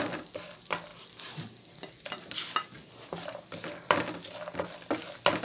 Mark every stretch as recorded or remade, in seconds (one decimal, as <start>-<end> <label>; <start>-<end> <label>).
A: 0.0-5.4 recorded